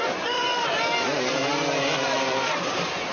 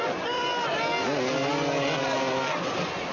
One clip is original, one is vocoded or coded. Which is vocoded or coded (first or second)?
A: first